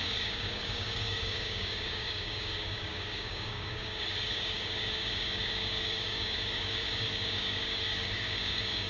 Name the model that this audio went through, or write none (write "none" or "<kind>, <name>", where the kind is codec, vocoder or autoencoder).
codec, DAC